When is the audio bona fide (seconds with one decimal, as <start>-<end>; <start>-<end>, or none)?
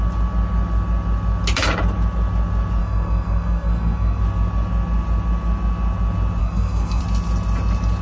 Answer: 0.0-2.8; 4.2-6.4; 7.0-8.0